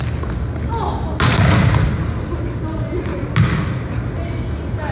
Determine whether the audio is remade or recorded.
recorded